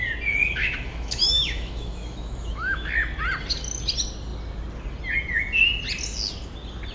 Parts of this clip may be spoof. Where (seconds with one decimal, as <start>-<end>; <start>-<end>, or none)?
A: 0.4-2.9

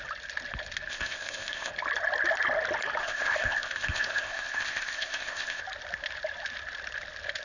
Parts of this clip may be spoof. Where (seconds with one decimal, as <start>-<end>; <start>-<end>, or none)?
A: 0.9-1.7; 3.0-5.6

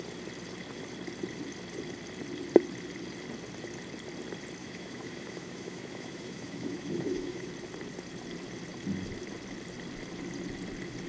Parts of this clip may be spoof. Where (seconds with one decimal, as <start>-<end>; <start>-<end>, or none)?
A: 4.6-7.5

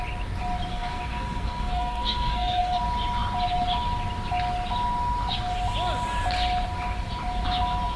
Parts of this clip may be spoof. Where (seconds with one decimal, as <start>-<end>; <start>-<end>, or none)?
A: 0.7-2.8

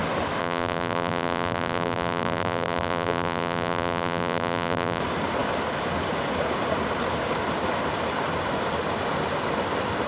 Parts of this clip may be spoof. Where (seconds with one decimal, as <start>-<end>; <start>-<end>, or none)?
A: 0.4-5.0

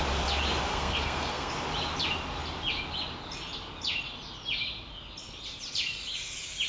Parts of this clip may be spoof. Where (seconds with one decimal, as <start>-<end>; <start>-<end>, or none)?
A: 0.7-1.5

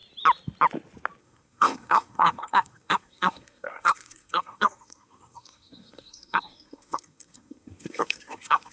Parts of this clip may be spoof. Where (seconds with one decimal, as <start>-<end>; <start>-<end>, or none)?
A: 1.2-8.7